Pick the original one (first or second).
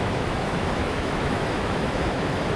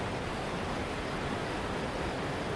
second